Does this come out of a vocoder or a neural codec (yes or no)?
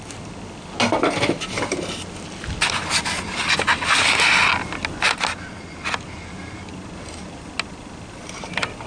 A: no